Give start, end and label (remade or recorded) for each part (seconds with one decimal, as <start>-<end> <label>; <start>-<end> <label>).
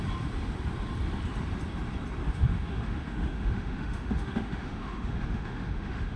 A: 0.0-2.2 recorded; 2.2-6.2 remade